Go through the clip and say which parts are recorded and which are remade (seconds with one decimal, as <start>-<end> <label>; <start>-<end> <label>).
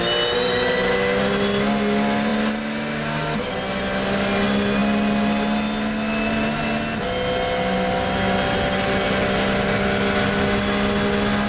0.0-11.5 recorded